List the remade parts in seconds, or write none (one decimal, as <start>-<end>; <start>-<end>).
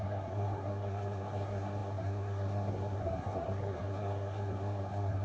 0.0-5.2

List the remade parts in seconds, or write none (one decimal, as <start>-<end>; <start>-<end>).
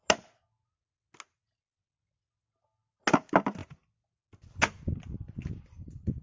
none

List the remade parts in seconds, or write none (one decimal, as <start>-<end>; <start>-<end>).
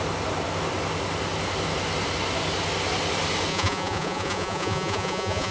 3.5-5.5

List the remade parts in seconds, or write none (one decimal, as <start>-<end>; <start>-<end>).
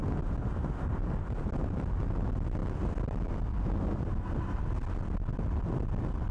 2.6-4.2